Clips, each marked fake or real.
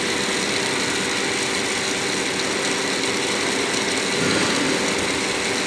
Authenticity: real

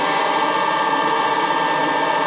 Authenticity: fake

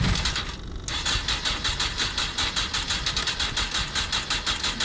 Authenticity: real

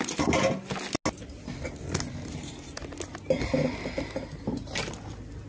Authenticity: real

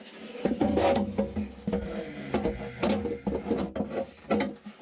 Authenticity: real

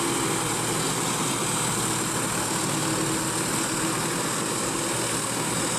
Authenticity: real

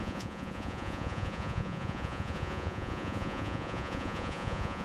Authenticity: fake